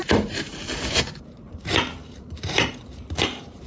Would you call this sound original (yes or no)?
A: no